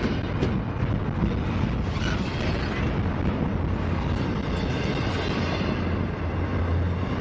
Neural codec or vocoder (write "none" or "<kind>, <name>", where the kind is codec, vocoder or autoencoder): none